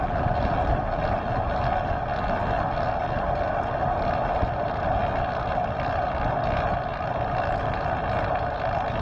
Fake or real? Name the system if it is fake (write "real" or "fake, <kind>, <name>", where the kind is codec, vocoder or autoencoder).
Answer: real